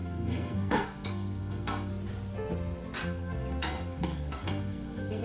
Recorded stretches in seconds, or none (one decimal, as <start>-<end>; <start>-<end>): 1.9-3.0